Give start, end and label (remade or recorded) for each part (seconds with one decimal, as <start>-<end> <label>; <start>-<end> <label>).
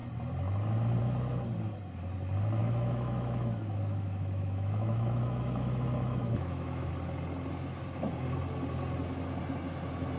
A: 0.0-2.6 recorded; 2.6-6.9 remade; 6.9-10.2 recorded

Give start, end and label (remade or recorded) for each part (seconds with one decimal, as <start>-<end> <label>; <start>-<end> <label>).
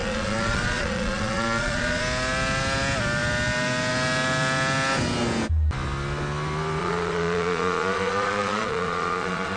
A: 0.0-2.0 remade; 2.0-6.8 recorded; 6.8-9.6 remade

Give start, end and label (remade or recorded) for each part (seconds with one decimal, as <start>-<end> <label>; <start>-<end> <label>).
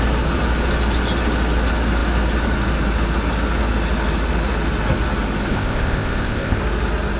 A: 0.0-5.5 recorded; 5.5-6.6 remade; 6.6-7.2 recorded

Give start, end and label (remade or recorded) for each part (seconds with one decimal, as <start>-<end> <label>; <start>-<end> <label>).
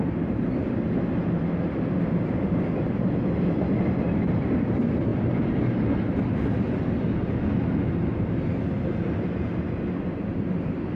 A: 0.0-5.1 recorded; 5.1-5.6 remade; 5.6-11.0 recorded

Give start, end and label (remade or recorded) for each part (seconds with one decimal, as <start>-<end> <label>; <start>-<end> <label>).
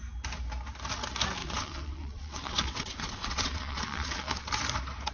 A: 0.0-1.4 recorded; 1.4-4.5 remade; 4.5-5.1 recorded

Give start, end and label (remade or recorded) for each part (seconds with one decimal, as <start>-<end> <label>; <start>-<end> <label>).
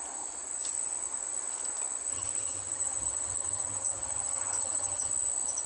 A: 0.0-2.1 recorded; 2.1-5.1 remade; 5.1-5.7 recorded